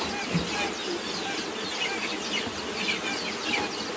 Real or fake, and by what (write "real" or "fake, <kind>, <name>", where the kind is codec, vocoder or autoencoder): real